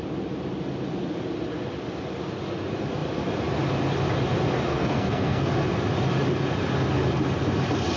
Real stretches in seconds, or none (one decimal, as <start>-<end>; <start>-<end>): 0.0-4.7; 5.5-8.0